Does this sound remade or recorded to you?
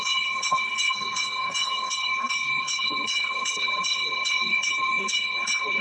remade